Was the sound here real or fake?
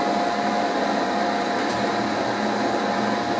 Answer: real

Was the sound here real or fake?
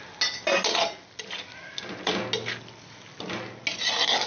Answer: real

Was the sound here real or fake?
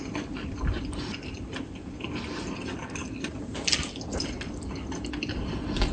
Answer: real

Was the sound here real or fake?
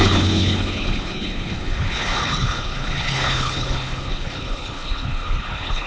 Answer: fake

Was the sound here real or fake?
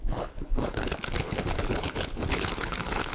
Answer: fake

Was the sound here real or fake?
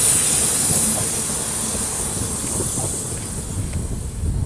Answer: real